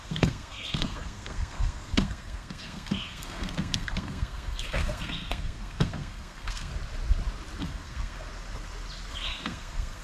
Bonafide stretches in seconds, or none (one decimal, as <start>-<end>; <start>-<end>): 6.7-7.6; 8.3-9.1